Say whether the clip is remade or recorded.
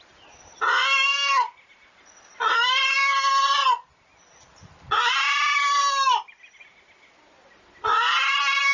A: recorded